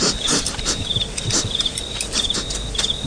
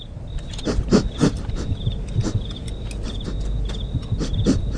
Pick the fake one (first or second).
first